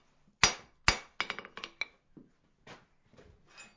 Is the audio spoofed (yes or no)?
no